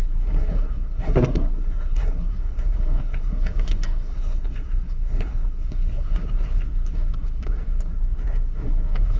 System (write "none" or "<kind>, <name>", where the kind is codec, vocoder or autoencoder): codec, SNAC